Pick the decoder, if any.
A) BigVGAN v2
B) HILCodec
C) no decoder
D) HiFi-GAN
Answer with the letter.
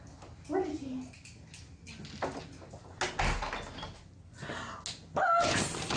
C